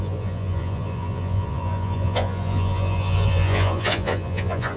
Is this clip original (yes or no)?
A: no